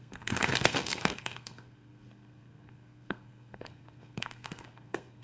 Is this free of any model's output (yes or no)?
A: no